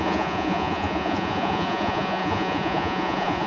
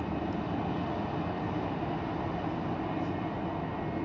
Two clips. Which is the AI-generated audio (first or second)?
first